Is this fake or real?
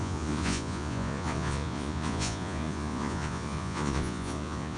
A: fake